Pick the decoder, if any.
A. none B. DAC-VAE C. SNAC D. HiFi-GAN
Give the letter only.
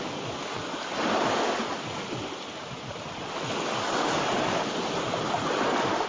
A